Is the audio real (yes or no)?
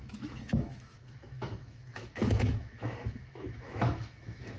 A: no